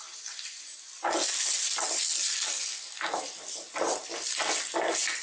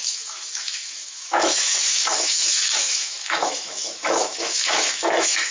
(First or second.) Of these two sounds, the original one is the first